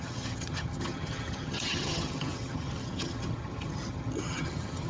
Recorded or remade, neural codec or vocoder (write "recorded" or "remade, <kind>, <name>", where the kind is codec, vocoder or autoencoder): remade, vocoder, HiFi-GAN